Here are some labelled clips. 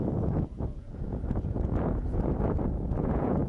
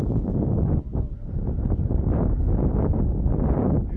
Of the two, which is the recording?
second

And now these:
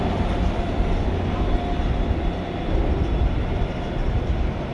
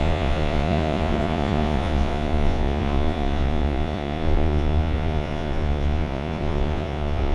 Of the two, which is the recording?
first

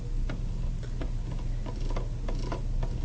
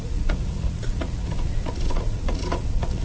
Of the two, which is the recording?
first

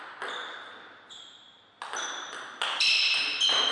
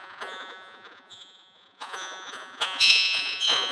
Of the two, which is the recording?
first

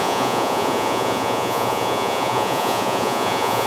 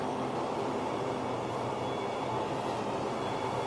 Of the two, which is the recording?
second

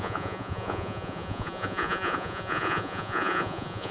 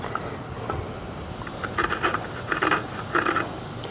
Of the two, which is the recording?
second